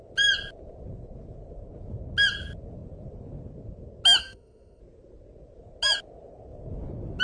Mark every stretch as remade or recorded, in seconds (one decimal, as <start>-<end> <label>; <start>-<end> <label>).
0.0-4.2 recorded; 4.2-4.8 remade; 4.8-7.2 recorded